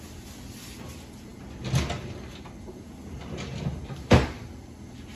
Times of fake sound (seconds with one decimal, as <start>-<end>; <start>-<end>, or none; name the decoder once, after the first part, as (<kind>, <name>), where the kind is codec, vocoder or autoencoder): none